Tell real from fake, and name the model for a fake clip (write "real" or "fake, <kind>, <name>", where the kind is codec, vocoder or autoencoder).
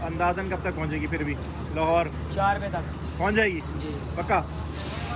real